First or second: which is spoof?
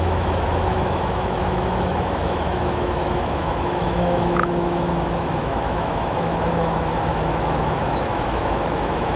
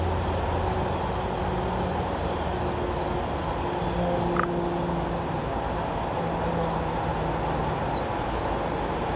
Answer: first